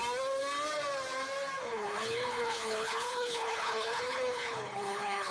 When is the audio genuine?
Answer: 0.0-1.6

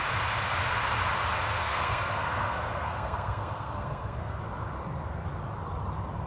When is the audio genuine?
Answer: 0.0-1.6; 4.4-6.3

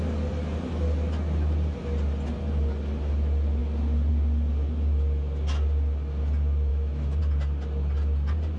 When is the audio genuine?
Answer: 0.0-6.7; 7.2-8.6

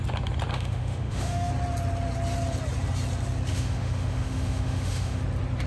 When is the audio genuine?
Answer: 0.0-0.5; 1.5-3.5; 5.2-5.7

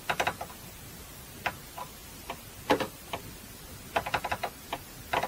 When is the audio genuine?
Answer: 0.0-2.0

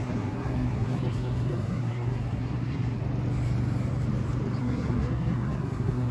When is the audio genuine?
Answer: 3.0-4.6

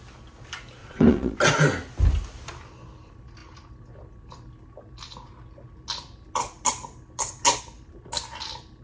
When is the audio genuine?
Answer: 0.0-0.8; 1.4-8.8

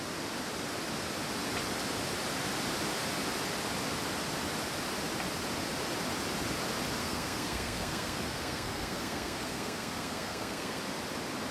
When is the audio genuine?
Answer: 0.0-7.0; 10.8-11.5